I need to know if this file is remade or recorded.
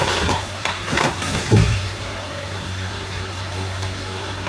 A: remade